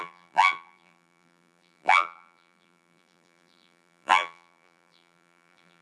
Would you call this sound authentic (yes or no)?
no